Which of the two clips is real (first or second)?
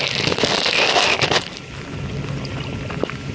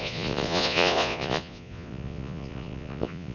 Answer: first